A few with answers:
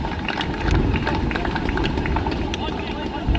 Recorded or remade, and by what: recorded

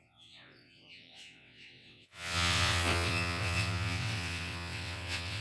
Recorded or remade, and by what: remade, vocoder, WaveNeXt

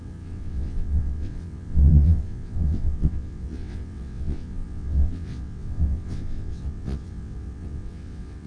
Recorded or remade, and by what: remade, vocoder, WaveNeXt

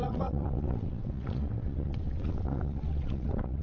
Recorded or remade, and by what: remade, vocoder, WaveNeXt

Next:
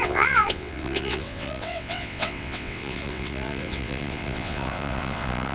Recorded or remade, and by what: remade, vocoder, WaveNeXt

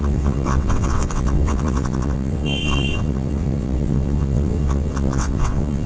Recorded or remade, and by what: remade, vocoder, WaveNeXt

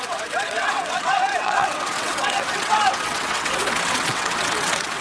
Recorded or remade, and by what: remade, vocoder, WaveNeXt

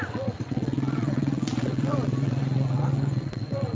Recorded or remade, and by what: remade, vocoder, WaveNeXt